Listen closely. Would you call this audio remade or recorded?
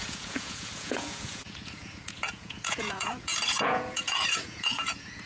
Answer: remade